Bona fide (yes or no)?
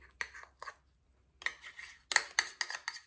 yes